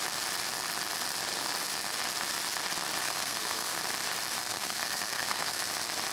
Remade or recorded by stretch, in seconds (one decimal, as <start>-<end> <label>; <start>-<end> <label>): 0.0-3.0 recorded; 3.0-3.8 remade; 3.8-4.4 recorded; 4.4-5.6 remade; 5.6-6.1 recorded